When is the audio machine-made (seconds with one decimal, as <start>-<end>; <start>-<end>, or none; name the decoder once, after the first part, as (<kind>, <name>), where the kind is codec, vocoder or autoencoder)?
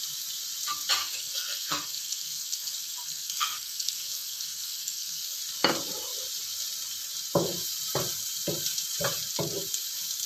1.0-5.4 (codec, SNAC)